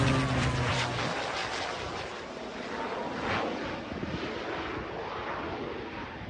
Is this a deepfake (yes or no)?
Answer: no